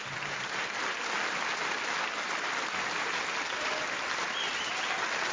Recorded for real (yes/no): yes